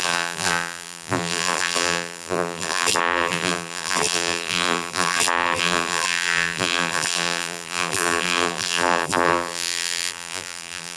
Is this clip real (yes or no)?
no